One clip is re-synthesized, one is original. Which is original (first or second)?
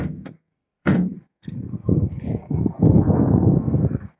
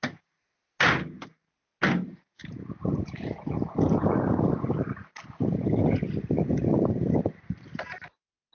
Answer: second